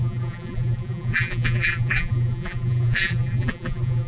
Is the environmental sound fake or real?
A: fake